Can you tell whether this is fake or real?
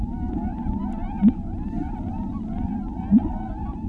real